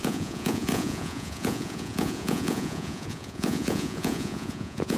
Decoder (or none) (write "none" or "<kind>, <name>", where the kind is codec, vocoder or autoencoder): vocoder, Vocos